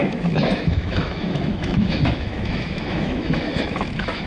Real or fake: fake